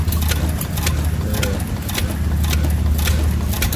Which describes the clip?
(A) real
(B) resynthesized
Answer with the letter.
A